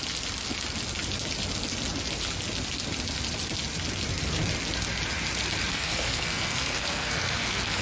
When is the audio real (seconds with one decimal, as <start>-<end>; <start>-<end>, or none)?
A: 0.0-5.7